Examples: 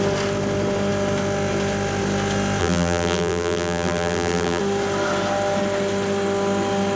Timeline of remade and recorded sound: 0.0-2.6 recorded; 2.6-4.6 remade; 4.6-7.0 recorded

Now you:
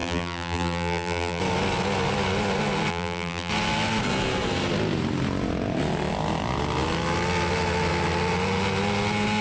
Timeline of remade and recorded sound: 0.0-1.4 remade; 1.4-2.9 recorded; 2.9-3.5 remade; 3.5-9.4 recorded

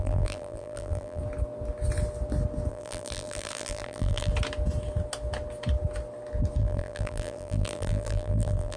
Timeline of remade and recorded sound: 0.0-1.2 remade; 1.2-2.7 recorded; 2.7-4.3 remade; 4.3-6.6 recorded; 6.6-8.8 remade

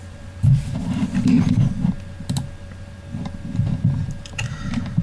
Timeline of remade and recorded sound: 0.0-1.0 remade; 1.0-4.0 recorded; 4.0-5.0 remade